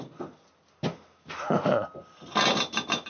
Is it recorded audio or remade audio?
recorded